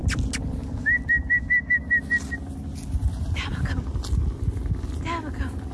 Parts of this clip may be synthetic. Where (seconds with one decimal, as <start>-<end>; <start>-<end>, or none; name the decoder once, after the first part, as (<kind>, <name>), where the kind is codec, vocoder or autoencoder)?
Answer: none